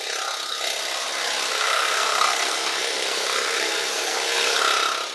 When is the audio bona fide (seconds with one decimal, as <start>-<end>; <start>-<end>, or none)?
0.0-1.5; 4.6-5.1